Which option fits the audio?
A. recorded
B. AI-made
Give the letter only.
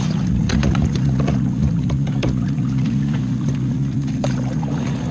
B